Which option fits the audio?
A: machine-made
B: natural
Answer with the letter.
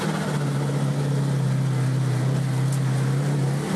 B